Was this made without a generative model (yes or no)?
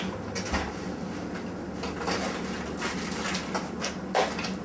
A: yes